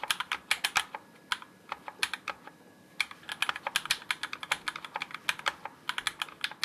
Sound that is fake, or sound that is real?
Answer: real